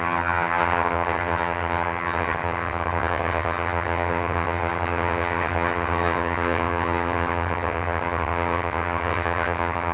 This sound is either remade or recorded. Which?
remade